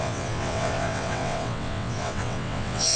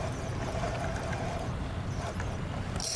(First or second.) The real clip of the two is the second